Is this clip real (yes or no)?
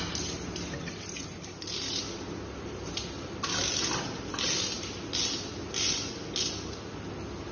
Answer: yes